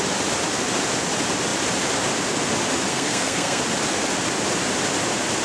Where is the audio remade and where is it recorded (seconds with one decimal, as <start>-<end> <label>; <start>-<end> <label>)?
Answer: 0.0-2.9 recorded; 2.9-3.6 remade; 3.6-5.4 recorded